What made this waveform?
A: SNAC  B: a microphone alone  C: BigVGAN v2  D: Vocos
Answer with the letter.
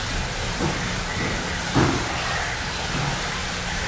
B